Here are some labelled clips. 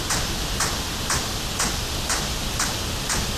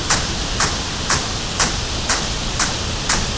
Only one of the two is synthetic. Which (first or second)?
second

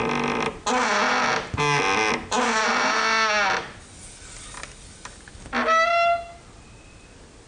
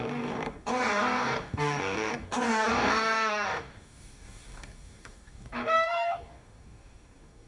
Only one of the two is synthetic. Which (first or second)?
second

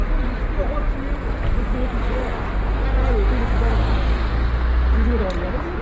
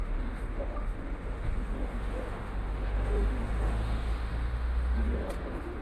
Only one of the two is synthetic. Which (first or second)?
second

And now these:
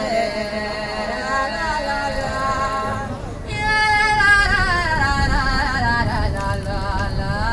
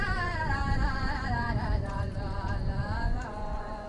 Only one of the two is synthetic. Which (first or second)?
second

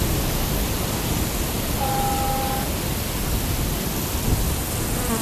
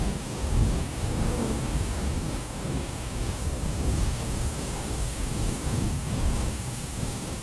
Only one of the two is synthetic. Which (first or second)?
second